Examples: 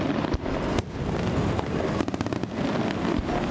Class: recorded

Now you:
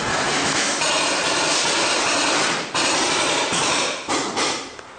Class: recorded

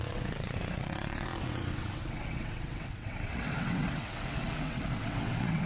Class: remade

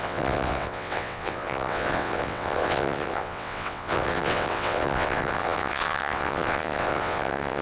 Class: remade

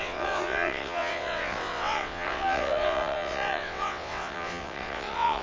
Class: remade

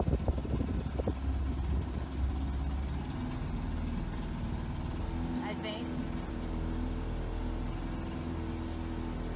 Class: recorded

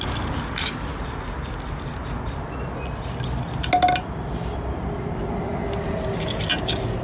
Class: recorded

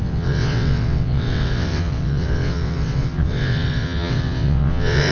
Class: remade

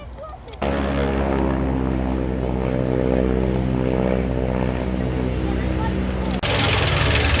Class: recorded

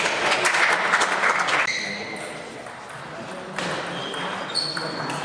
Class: recorded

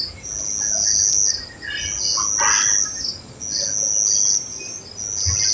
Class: recorded